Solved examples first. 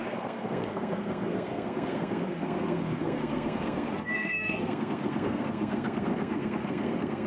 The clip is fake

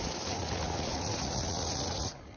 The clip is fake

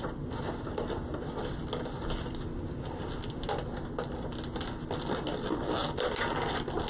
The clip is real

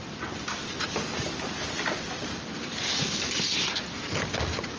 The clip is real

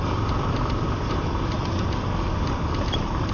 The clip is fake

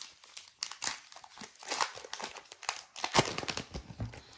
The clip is real